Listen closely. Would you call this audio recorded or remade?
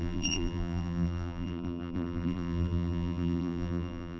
remade